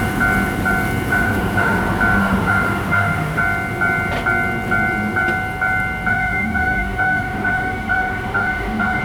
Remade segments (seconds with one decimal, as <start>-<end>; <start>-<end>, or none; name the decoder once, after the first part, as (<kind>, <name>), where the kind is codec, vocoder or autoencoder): 1.1-1.8 (autoencoder, DAC-VAE); 2.2-3.4; 6.1-9.0

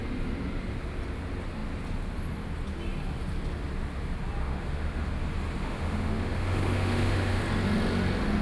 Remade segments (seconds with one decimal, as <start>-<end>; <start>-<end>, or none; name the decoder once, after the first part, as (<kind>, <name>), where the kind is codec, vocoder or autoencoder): 4.4-5.1 (autoencoder, DAC-VAE); 5.6-7.4

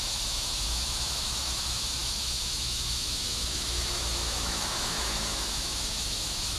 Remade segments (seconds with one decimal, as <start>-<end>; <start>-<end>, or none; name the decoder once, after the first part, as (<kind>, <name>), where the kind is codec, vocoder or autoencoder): 0.0-6.6 (autoencoder, DAC-VAE)

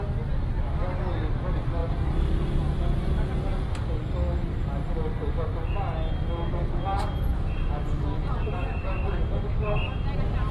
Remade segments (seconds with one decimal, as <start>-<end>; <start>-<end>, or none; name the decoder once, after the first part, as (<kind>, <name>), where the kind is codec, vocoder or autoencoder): none

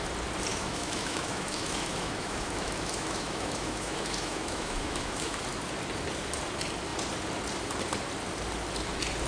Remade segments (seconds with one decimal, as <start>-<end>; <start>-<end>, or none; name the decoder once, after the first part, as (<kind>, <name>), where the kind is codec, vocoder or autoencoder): 0.5-5.4 (autoencoder, DAC-VAE)